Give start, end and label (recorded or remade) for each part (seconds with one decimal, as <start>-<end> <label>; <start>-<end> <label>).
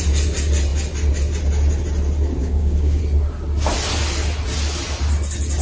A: 0.0-2.4 recorded; 2.4-3.0 remade; 3.0-5.6 recorded